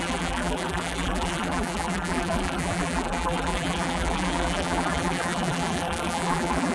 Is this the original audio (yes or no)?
no